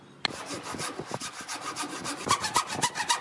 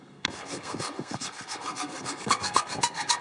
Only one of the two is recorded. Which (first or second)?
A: first